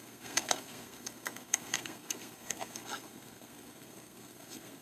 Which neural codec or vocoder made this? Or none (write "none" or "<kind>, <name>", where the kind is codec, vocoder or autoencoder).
codec, SNAC